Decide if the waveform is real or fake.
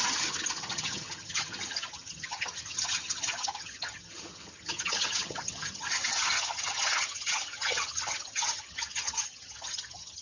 fake